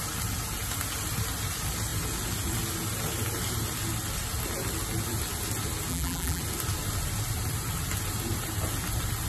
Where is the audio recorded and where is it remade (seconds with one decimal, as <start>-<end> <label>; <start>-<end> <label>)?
0.0-5.9 recorded; 5.9-6.4 remade; 6.4-9.3 recorded